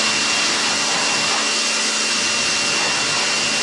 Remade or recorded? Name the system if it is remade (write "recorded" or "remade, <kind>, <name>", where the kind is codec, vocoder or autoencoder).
recorded